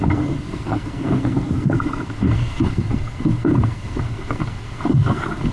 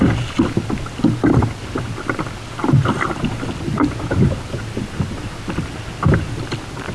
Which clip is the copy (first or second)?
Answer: first